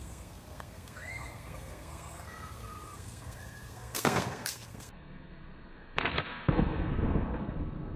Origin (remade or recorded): remade